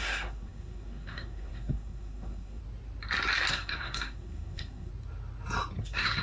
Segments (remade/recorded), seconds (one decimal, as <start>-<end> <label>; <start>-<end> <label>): 0.0-2.6 remade; 2.6-3.5 recorded; 3.5-4.9 remade; 4.9-5.8 recorded; 5.8-6.2 remade